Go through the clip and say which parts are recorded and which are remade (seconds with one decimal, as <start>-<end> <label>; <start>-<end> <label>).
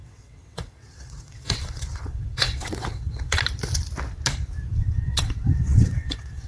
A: 0.0-3.4 remade; 3.4-4.7 recorded; 4.7-6.5 remade